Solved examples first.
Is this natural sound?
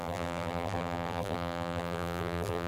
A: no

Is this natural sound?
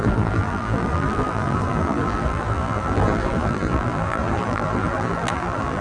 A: no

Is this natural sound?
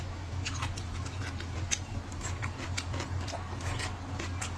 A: yes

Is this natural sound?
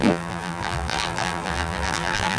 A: no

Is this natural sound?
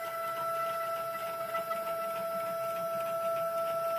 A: yes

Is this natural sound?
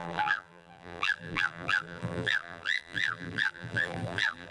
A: no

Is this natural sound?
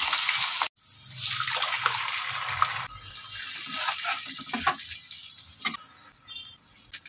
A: yes